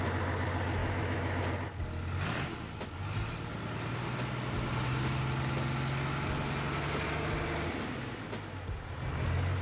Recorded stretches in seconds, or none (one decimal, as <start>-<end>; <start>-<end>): 0.0-0.8; 1.4-9.6